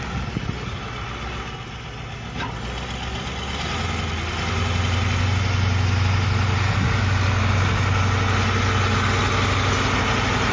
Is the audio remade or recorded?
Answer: recorded